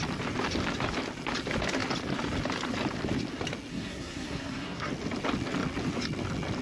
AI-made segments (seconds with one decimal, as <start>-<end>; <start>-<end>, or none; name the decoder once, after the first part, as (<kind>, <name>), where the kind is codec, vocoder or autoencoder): 3.7-4.9 (codec, SNAC)